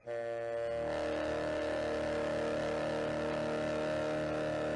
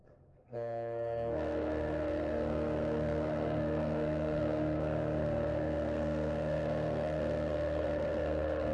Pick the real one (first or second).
first